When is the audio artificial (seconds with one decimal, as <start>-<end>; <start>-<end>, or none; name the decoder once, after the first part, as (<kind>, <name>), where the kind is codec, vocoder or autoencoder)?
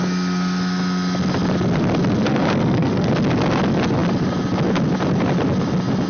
2.3-3.1 (codec, SNAC)